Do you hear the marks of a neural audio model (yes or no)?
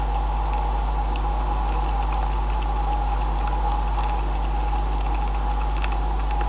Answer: no